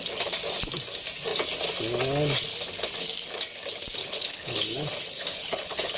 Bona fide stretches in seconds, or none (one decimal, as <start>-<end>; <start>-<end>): 0.0-4.0